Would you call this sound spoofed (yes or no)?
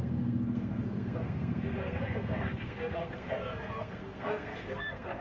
yes